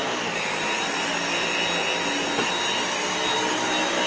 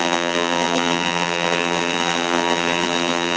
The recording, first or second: first